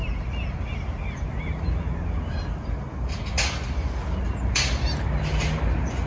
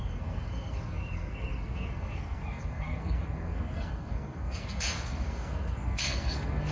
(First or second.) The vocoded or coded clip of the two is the second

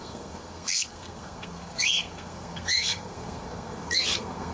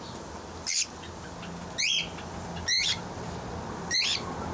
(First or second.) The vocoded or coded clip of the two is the first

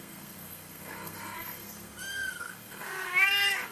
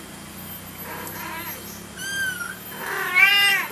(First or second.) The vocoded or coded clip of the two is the first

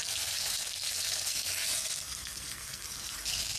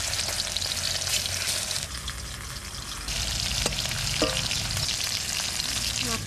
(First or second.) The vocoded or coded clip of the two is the first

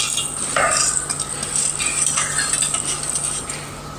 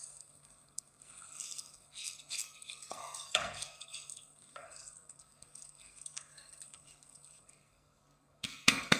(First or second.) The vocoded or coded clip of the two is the second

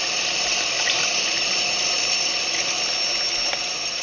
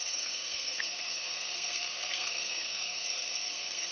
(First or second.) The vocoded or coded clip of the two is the second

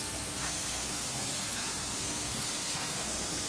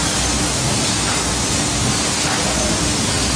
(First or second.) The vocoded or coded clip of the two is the first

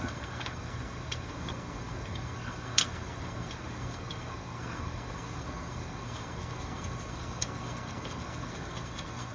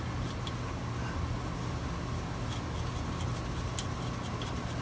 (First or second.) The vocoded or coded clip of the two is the first